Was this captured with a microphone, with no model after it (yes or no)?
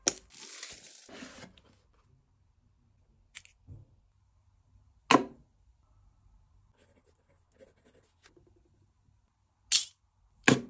yes